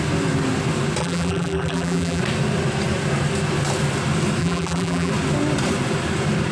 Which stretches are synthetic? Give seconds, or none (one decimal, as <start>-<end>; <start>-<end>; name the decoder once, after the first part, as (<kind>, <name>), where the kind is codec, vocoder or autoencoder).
1.0-2.2 (vocoder, BigVGAN v2); 4.4-5.1